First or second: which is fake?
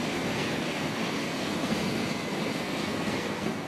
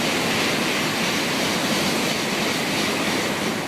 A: first